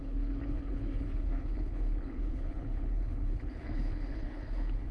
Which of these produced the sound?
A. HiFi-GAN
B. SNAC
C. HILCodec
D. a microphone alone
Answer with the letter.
C